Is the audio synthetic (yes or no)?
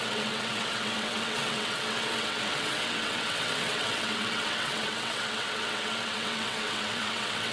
yes